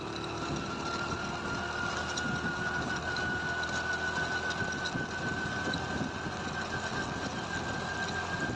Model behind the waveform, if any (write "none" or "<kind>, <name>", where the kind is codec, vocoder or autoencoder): none